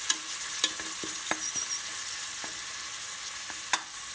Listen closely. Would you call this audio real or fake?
real